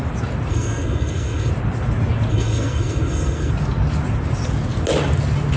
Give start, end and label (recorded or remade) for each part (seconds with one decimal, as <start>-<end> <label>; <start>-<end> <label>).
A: 0.0-0.5 recorded; 0.5-1.5 remade; 1.5-2.3 recorded; 2.3-3.5 remade; 3.5-5.6 recorded